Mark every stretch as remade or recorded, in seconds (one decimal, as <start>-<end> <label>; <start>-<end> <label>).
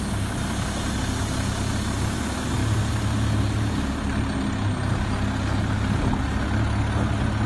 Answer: 0.0-2.6 recorded; 2.6-4.2 remade; 4.2-5.4 recorded; 5.4-6.6 remade; 6.6-7.5 recorded